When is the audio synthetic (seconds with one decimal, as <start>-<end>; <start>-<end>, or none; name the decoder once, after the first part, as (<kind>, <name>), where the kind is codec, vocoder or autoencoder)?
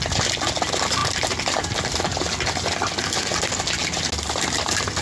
none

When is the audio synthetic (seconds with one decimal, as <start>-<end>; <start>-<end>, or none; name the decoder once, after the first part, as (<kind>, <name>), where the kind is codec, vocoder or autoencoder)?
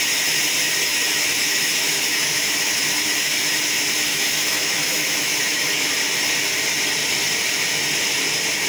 0.9-2.8 (autoencoder, DAC-VAE); 4.1-5.9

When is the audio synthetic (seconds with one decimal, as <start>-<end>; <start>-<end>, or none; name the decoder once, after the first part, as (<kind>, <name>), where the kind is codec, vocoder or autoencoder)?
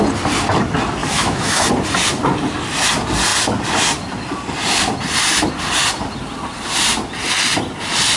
1.0-1.7 (autoencoder, DAC-VAE)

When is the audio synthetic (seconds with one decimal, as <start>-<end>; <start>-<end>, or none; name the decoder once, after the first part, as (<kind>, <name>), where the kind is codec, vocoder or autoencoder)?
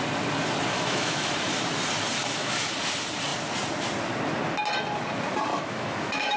0.7-1.3 (autoencoder, DAC-VAE); 2.2-2.7; 5.5-6.4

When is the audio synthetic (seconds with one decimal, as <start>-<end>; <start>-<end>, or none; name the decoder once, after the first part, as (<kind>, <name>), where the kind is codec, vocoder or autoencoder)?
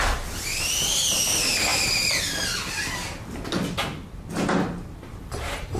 none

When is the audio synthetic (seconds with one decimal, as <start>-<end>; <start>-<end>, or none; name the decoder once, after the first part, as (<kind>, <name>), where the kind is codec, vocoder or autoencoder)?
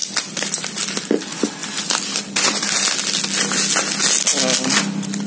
none